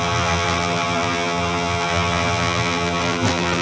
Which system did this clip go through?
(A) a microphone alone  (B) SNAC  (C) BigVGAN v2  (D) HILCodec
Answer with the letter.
C